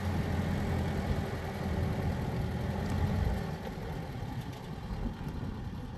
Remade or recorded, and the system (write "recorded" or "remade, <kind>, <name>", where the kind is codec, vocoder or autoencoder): recorded